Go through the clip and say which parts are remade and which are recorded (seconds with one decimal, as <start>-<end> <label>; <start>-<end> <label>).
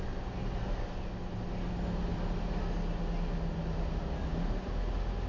0.0-5.3 recorded